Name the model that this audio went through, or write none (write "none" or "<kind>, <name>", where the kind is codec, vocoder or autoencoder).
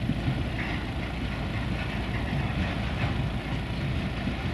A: none